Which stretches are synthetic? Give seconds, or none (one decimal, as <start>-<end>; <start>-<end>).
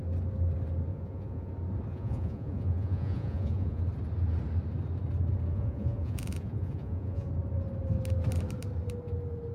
0.9-1.5; 1.9-3.8; 5.5-7.3